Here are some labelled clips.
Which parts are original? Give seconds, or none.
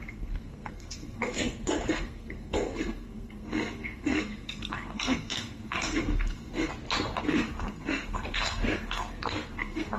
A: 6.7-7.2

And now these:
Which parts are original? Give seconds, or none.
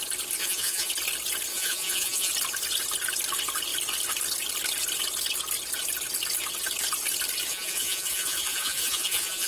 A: 0.0-0.4; 0.9-1.5; 2.3-7.5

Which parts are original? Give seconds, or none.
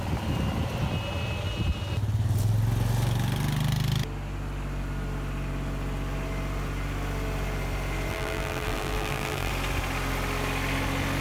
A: 0.0-8.1; 9.5-11.2